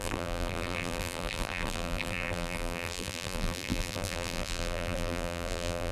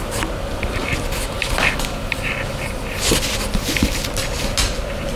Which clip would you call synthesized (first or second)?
first